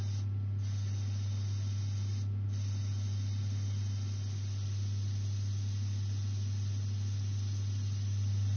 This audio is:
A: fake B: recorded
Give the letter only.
B